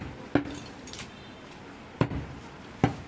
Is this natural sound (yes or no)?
yes